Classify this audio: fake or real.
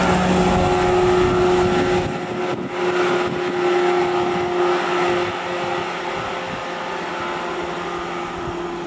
real